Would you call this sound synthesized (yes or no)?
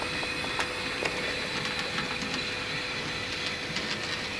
no